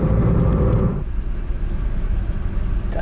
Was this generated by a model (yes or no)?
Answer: yes